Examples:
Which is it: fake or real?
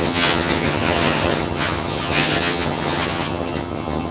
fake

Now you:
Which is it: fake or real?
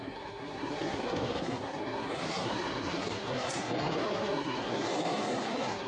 fake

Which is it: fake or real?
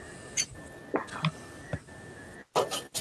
real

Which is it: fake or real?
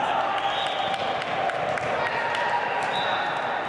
real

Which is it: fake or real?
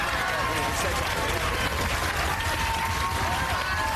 real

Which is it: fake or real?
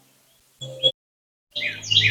real